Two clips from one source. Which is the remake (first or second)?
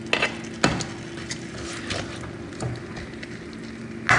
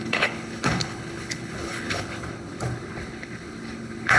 second